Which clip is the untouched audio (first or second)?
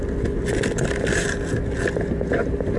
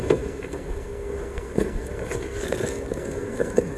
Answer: first